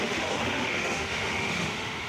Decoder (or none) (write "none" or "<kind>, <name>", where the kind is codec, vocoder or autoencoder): autoencoder, DAC-VAE